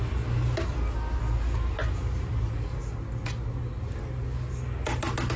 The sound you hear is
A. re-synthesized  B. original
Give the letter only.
B